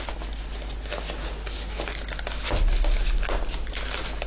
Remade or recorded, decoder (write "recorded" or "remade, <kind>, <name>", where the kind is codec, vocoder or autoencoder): recorded